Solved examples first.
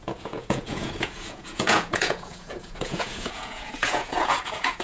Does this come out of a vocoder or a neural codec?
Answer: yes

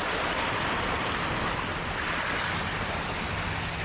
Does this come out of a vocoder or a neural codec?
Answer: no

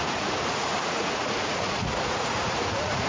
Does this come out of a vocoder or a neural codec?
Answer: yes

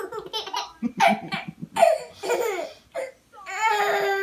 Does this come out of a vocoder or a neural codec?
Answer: no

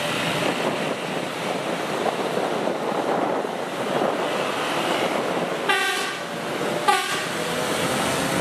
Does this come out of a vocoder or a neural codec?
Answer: no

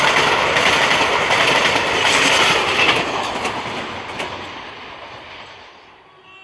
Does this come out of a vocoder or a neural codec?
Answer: no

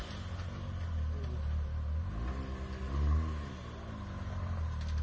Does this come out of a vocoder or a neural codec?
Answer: no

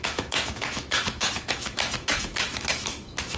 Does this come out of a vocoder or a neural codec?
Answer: yes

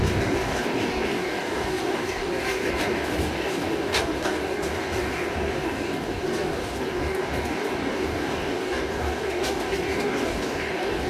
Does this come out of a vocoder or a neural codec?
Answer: yes